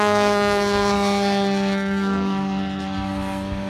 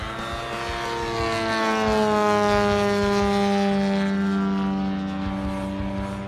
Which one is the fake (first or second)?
first